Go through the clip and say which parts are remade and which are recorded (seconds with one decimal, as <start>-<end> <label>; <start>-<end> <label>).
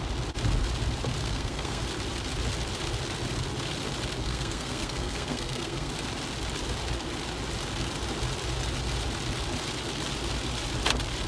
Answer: 0.0-1.2 recorded; 1.2-1.8 remade; 1.8-4.2 recorded; 4.2-5.9 remade; 5.9-11.3 recorded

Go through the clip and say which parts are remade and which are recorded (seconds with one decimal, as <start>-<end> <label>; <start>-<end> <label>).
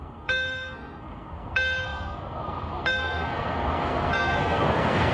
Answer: 0.0-5.1 remade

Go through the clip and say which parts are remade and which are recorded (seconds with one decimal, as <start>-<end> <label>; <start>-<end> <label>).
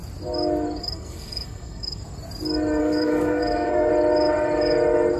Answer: 0.0-0.8 recorded; 0.8-2.0 remade; 2.0-2.8 recorded; 2.8-3.9 remade; 3.9-5.2 recorded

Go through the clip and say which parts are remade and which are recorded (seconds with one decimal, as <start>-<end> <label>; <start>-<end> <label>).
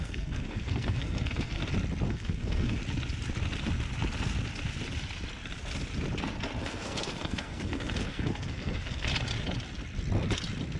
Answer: 0.0-1.6 remade; 1.6-2.1 recorded; 2.1-2.8 remade; 2.8-6.6 recorded; 6.6-9.1 remade; 9.1-10.8 recorded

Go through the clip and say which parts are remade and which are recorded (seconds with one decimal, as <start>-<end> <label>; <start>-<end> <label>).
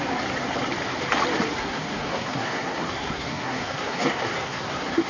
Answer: 0.0-1.6 recorded; 1.6-5.1 remade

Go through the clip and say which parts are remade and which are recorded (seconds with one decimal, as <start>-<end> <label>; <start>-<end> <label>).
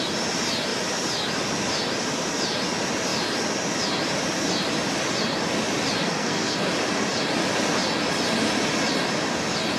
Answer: 0.0-6.0 recorded; 6.0-6.7 remade; 6.7-9.8 recorded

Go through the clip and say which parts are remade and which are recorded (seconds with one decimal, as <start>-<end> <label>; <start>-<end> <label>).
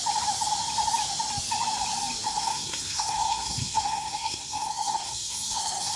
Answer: 0.0-2.3 recorded; 2.3-6.0 remade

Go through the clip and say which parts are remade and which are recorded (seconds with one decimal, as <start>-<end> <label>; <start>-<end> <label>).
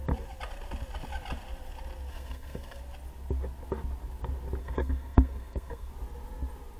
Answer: 0.0-2.1 recorded; 2.1-2.8 remade; 2.8-4.6 recorded; 4.6-5.9 remade; 5.9-6.8 recorded